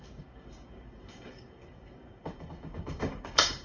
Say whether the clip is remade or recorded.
remade